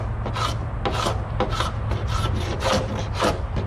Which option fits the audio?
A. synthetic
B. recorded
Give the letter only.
B